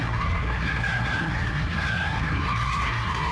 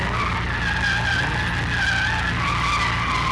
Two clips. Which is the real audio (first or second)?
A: second